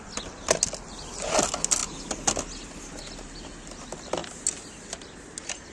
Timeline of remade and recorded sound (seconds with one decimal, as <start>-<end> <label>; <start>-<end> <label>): 0.0-5.7 recorded